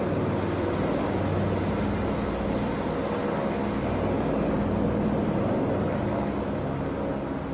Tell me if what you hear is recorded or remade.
recorded